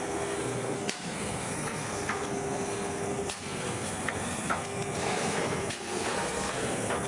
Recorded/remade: remade